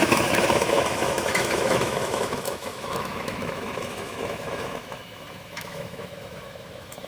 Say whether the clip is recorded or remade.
remade